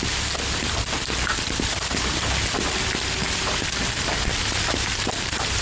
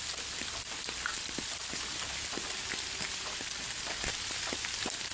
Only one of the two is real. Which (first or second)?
second